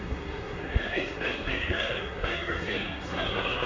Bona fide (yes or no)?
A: no